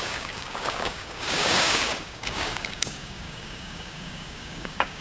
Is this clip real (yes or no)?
no